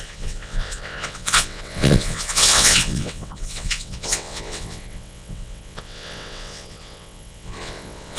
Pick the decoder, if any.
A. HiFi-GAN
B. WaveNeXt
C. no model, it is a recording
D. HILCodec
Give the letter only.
B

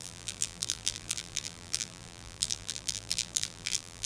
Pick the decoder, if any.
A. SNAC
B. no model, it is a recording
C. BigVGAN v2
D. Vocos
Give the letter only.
C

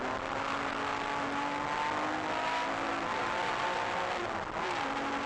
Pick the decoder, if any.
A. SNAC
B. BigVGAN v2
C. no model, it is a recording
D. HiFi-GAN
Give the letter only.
C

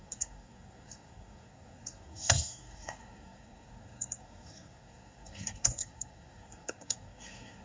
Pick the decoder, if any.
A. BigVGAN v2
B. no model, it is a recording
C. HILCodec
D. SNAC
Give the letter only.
D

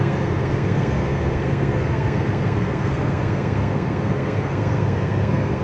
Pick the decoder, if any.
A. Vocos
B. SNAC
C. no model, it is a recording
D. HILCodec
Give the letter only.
B